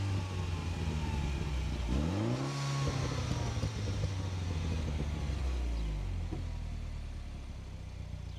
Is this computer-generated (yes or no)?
no